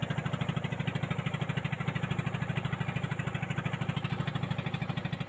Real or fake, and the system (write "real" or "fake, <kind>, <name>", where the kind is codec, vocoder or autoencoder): real